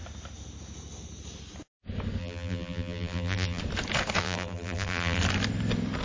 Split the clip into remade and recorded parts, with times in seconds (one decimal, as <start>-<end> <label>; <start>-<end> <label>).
0.0-2.2 recorded; 2.2-3.6 remade; 3.6-4.2 recorded; 4.2-5.2 remade; 5.2-6.0 recorded